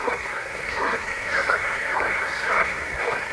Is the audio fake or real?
fake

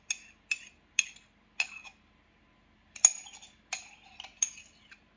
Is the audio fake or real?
real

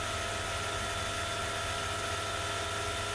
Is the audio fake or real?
real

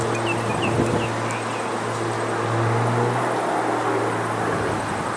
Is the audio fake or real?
real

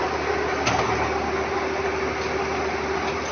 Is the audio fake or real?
real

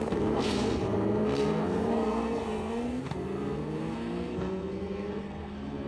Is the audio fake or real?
fake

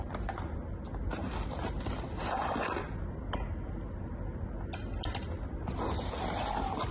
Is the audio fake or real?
real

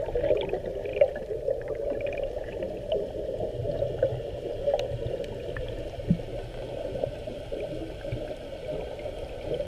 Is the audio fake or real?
real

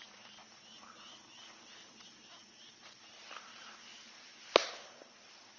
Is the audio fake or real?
real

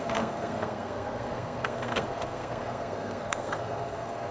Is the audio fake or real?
fake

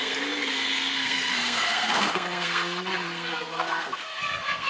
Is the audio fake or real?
fake